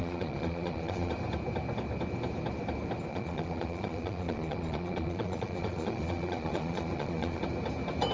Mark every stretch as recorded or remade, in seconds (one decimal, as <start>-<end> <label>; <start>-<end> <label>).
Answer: 0.0-1.1 remade; 1.1-3.1 recorded; 3.1-7.4 remade; 7.4-8.1 recorded